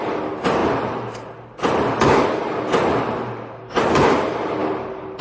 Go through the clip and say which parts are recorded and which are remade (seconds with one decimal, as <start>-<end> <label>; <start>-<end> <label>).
0.0-5.2 recorded